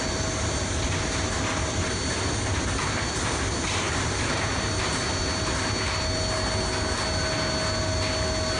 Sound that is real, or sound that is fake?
real